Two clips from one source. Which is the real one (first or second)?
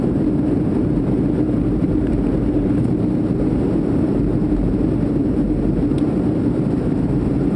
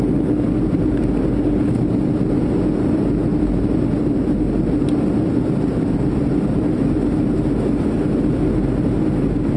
second